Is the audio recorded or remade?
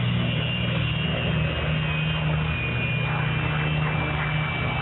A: recorded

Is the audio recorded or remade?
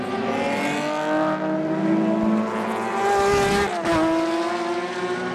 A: recorded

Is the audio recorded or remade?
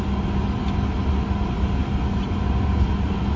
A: recorded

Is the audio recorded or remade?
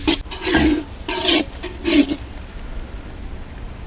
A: recorded